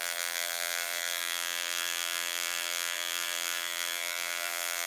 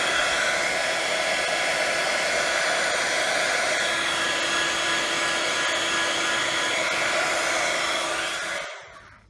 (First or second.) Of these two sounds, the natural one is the second